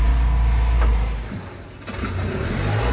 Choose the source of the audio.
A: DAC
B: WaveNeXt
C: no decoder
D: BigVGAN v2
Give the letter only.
C